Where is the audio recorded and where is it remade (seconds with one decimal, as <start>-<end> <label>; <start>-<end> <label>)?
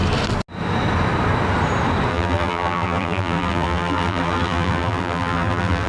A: 0.0-2.1 recorded; 2.1-5.9 remade